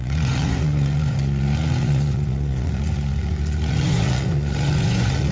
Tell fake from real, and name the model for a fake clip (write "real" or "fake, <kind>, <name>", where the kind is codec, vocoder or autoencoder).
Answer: fake, vocoder, Vocos